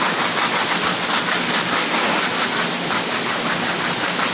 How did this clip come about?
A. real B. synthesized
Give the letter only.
A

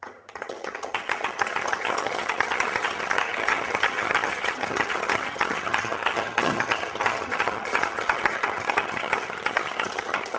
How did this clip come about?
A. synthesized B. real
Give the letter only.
A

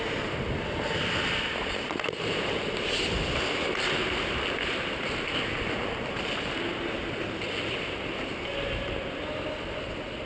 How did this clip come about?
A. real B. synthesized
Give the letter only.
A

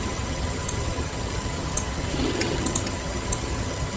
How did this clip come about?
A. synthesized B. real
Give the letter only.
A